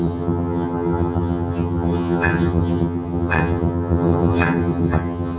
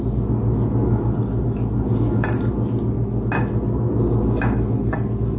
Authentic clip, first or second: second